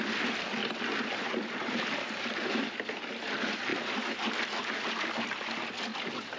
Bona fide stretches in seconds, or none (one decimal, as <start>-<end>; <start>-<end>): 0.0-6.4